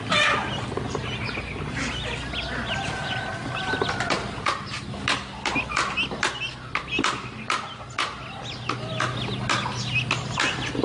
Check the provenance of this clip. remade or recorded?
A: recorded